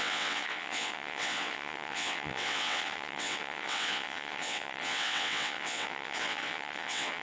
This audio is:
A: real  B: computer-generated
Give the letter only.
B